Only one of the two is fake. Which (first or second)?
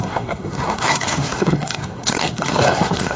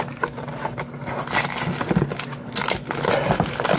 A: first